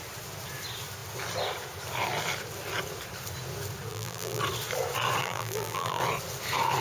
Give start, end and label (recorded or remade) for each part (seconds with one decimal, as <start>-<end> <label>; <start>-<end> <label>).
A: 0.0-3.9 recorded; 3.9-4.4 remade; 4.4-5.2 recorded; 5.2-6.0 remade; 6.0-6.8 recorded